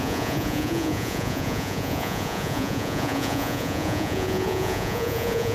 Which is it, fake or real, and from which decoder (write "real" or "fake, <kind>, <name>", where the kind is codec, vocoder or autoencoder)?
fake, vocoder, Vocos